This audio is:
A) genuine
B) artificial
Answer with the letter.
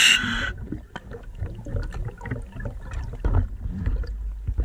A